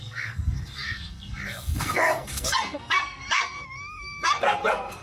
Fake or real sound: fake